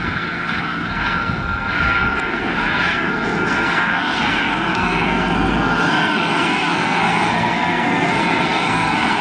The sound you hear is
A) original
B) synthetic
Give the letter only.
B